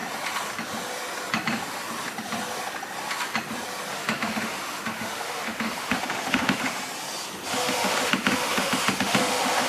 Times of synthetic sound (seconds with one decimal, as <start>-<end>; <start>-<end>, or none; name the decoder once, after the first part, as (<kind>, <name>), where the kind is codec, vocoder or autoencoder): 3.9-6.8 (autoencoder, DAC-VAE); 7.5-9.7